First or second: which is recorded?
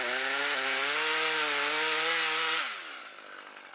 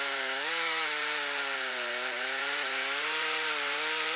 first